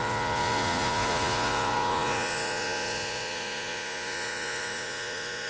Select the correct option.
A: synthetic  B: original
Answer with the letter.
A